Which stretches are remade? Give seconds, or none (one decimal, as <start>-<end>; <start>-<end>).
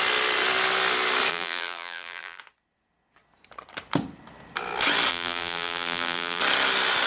1.3-2.4; 5.1-6.4